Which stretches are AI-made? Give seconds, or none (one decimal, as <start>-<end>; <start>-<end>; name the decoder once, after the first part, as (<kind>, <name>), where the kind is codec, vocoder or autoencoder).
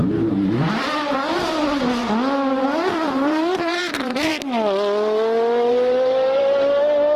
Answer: 0.0-2.0 (vocoder, BigVGAN v2); 2.6-4.3; 5.7-7.2